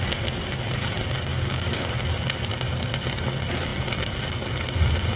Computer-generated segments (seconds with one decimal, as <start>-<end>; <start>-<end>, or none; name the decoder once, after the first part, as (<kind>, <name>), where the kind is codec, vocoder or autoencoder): 1.3-1.9 (codec, DAC)